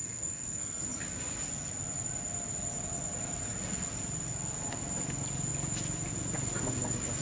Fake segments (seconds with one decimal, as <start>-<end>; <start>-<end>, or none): 0.0-0.8